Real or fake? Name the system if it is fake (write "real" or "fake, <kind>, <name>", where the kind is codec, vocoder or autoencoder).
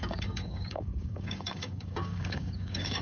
fake, codec, DAC